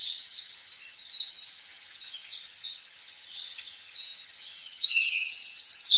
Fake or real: fake